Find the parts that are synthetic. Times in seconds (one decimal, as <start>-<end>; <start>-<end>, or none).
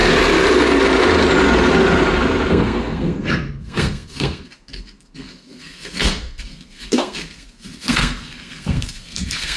2.5-9.6